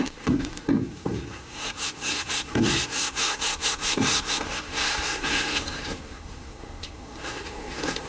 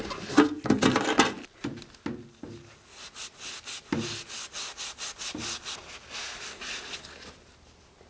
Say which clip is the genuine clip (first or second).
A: second